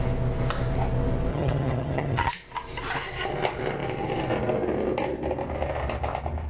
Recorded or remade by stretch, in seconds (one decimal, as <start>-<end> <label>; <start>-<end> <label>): 0.0-1.3 recorded; 1.3-2.3 remade; 2.3-6.5 recorded